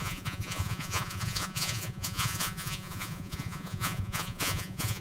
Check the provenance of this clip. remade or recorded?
remade